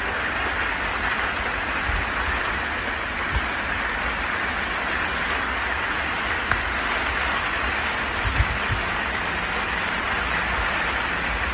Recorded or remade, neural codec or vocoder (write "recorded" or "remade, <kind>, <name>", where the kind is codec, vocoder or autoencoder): recorded